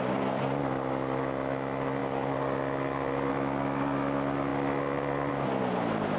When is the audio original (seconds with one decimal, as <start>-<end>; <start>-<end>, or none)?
0.0-6.2